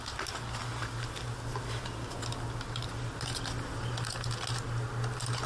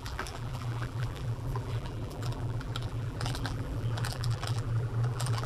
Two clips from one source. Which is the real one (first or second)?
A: first